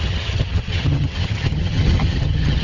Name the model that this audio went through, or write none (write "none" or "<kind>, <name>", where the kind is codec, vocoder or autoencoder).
vocoder, HiFi-GAN